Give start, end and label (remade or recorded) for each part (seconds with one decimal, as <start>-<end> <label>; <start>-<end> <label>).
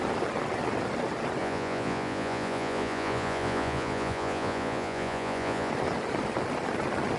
0.0-1.4 recorded; 1.4-5.7 remade; 5.7-7.2 recorded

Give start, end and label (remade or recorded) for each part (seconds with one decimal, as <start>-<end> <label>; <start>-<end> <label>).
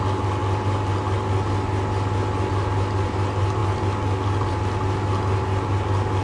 0.0-6.2 recorded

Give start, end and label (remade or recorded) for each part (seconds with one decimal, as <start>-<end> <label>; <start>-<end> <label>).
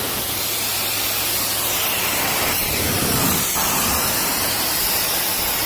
0.0-5.7 remade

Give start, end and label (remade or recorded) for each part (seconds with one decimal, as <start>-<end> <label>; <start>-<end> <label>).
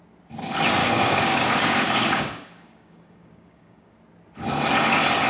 0.0-0.8 recorded; 0.8-4.0 remade; 4.0-5.3 recorded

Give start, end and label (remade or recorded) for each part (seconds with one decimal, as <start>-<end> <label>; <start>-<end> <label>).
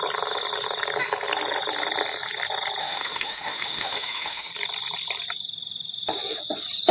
0.0-2.8 recorded; 2.8-4.5 remade; 4.5-6.9 recorded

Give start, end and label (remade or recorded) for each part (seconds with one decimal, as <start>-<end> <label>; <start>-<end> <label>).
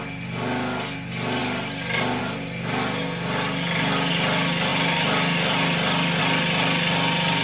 0.0-7.4 recorded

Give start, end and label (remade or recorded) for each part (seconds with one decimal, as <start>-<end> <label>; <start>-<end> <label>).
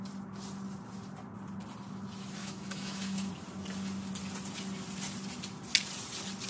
0.0-2.4 recorded; 2.4-3.3 remade; 3.3-6.5 recorded